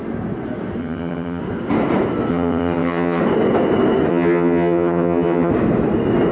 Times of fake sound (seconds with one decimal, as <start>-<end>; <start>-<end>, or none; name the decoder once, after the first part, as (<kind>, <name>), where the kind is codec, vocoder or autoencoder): 0.8-1.4 (vocoder, HiFi-GAN); 2.3-3.2; 4.1-5.5